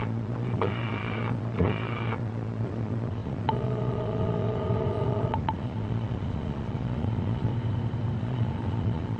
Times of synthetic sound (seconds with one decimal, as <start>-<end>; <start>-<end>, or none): 0.0-7.5; 8.2-9.2